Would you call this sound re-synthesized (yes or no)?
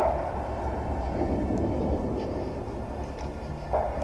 no